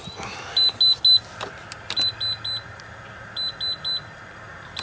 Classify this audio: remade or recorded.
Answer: recorded